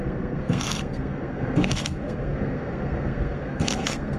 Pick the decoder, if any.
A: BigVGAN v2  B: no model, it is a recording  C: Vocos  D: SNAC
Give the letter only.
D